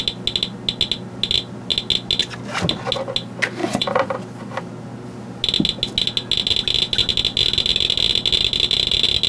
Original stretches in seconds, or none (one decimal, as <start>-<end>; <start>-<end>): 0.0-3.6; 4.1-9.3